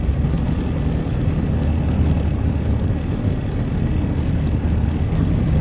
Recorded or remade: recorded